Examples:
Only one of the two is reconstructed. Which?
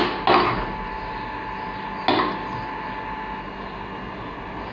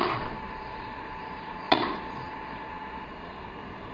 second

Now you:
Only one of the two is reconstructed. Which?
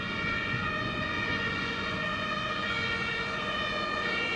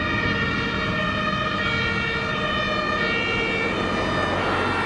first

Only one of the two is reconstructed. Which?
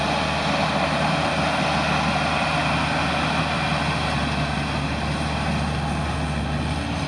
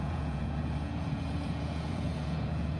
second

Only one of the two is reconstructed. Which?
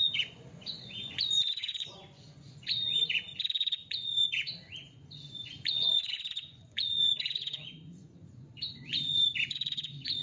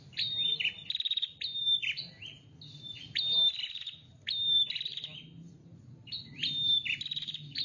first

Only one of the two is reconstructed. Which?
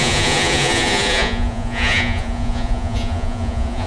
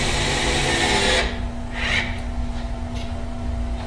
first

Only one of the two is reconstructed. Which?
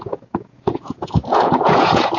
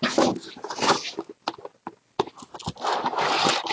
first